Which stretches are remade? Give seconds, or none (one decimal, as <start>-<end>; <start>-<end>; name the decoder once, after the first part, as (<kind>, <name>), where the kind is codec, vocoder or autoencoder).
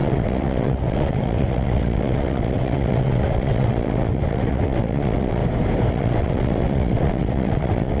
0.0-5.4 (vocoder, WaveNeXt); 5.9-8.0